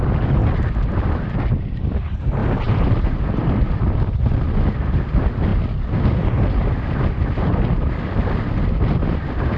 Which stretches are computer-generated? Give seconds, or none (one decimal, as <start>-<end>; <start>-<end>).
2.4-3.6